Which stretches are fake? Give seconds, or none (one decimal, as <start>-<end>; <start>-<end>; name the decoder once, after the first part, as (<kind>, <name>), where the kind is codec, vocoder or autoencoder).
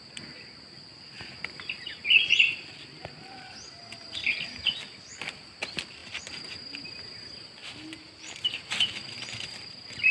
6.0-7.0 (vocoder, BigVGAN v2)